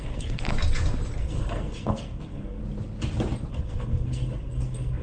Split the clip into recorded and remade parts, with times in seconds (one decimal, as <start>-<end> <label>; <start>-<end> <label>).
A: 0.0-0.5 remade; 0.5-1.2 recorded; 1.2-2.6 remade; 2.6-3.5 recorded; 3.5-5.0 remade